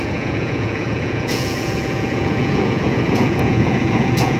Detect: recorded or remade remade